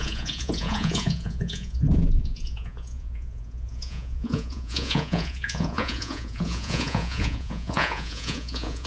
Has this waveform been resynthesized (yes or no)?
yes